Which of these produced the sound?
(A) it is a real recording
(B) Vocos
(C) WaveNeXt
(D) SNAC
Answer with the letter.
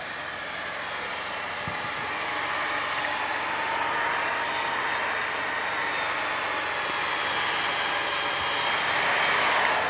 A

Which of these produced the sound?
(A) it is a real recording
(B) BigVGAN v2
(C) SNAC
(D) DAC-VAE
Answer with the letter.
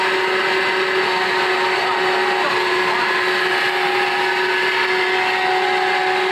A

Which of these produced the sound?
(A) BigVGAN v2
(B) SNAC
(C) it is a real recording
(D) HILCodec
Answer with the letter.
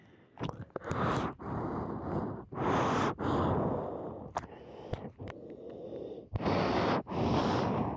C